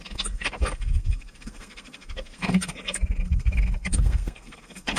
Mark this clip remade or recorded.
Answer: remade